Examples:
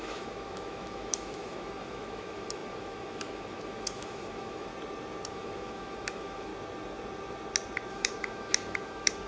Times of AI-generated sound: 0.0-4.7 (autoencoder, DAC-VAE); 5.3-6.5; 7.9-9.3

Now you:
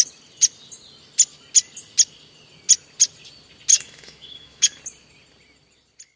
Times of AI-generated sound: 3.7-4.8 (autoencoder, DAC-VAE)

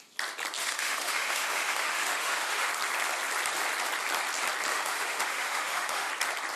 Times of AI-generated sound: 0.6-2.7 (autoencoder, DAC-VAE); 4.7-6.1

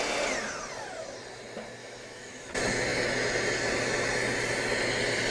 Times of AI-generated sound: 1.8-2.5 (autoencoder, DAC-VAE)

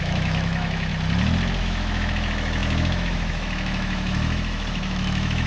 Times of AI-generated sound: 0.0-0.9 (autoencoder, DAC-VAE); 1.6-5.5

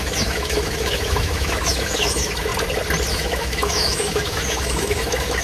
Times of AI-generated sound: 0.0-2.5 (autoencoder, DAC-VAE); 3.1-5.4

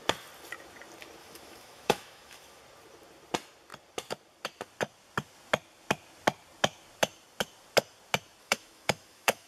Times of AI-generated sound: 1.2-2.6 (autoencoder, DAC-VAE); 8.4-9.5